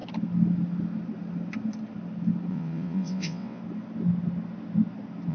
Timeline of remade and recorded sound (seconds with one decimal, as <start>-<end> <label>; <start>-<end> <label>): 0.0-2.5 recorded; 2.5-3.6 remade; 3.6-5.3 recorded